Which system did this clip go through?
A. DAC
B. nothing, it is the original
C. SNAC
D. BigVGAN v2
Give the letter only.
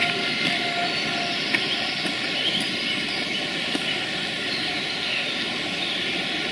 B